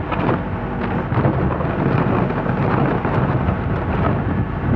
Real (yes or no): yes